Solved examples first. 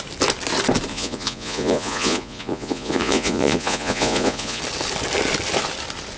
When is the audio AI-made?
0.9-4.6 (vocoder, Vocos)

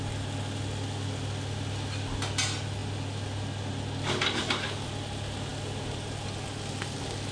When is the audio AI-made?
none

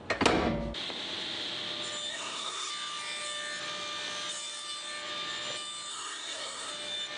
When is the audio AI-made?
2.1-2.7 (codec, SNAC); 5.9-6.7

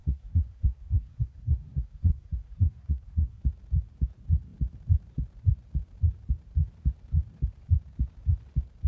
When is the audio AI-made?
0.0-3.4 (codec, SNAC)

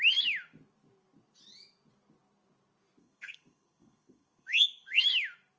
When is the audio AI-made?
3.0-5.0 (codec, SNAC)

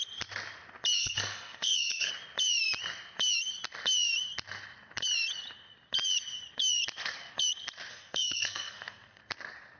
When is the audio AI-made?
1.0-2.1 (codec, SNAC); 7.9-9.2

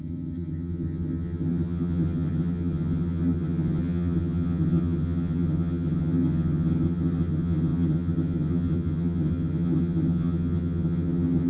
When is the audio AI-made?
0.0-11.5 (vocoder, HiFi-GAN)